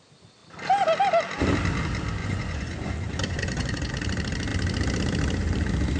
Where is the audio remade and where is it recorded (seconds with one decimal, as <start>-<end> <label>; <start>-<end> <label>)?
0.0-2.2 recorded; 2.2-3.9 remade; 3.9-6.0 recorded